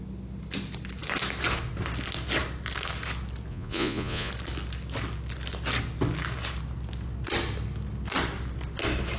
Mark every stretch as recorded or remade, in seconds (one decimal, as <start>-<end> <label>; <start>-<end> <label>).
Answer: 0.0-3.5 recorded; 3.5-4.3 remade; 4.3-9.2 recorded